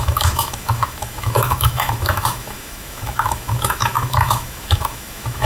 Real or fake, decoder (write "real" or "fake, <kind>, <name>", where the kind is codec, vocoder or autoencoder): fake, autoencoder, DAC-VAE